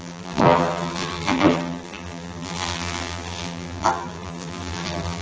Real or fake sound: fake